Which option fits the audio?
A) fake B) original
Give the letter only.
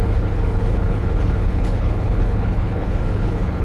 A